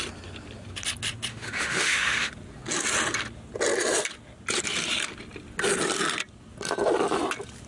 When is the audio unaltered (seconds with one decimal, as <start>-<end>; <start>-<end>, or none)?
0.0-1.3; 2.3-7.7